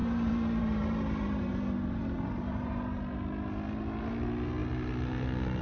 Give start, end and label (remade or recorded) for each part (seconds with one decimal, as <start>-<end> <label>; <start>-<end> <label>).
0.0-3.0 remade; 3.0-5.6 recorded